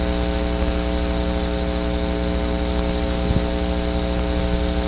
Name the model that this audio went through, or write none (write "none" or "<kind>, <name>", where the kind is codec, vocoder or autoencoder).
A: none